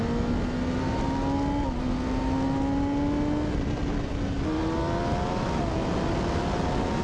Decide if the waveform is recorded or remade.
recorded